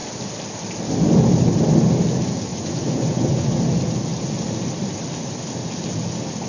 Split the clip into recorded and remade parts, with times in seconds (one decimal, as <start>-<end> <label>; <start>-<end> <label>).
0.0-2.5 recorded; 2.5-3.6 remade; 3.6-6.5 recorded